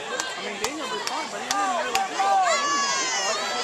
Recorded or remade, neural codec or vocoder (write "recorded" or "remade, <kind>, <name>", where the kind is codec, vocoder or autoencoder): recorded